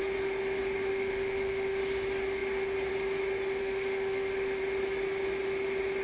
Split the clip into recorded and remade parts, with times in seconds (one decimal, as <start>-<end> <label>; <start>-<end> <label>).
0.0-0.9 recorded; 0.9-1.8 remade; 1.8-3.6 recorded; 3.6-4.6 remade; 4.6-6.0 recorded